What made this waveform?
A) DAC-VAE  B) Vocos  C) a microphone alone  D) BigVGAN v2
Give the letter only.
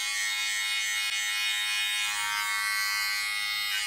C